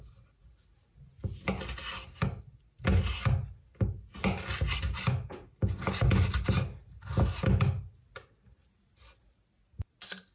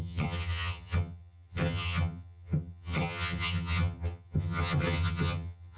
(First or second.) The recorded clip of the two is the first